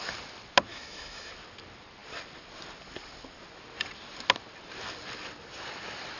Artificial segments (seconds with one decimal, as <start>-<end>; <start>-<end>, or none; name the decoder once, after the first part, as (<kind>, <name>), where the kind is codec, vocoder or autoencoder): 0.7-1.3 (autoencoder, DAC-VAE)